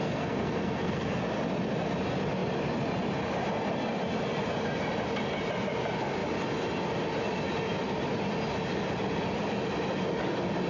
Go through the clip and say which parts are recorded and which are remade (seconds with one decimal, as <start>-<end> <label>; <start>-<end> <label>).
0.0-1.2 remade; 1.2-10.7 recorded